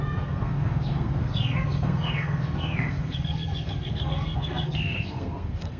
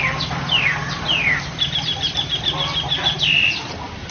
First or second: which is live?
second